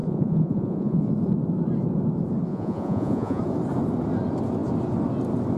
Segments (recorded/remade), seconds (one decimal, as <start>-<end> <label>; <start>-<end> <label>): 0.0-1.1 remade; 1.1-2.5 recorded; 2.5-3.4 remade; 3.4-5.6 recorded